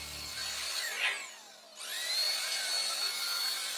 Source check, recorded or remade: recorded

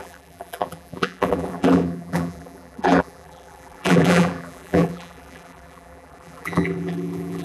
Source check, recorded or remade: remade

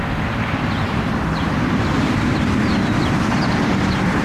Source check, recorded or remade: remade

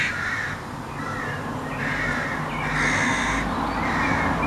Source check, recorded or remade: recorded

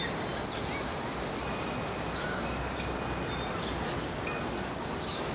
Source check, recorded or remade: recorded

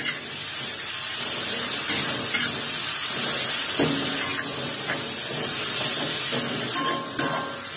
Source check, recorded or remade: recorded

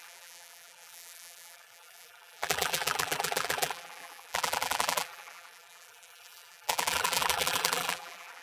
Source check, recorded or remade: remade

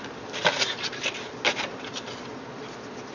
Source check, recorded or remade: recorded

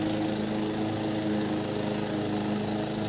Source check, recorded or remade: recorded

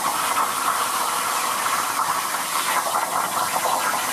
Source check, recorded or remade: remade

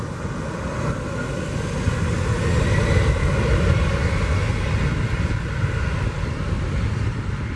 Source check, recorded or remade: recorded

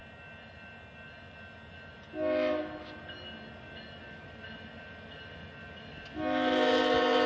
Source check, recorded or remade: recorded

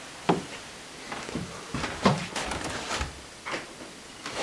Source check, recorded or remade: remade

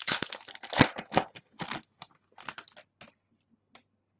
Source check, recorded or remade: recorded